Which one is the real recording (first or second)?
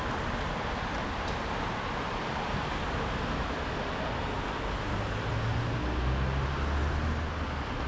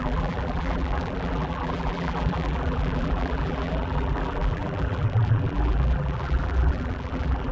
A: first